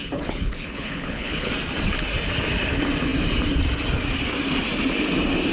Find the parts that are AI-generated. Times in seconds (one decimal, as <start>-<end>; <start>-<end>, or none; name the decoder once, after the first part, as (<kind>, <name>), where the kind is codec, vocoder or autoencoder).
0.0-1.5 (codec, HILCodec)